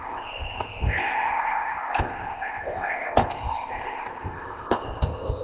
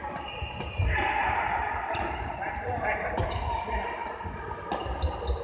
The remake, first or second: first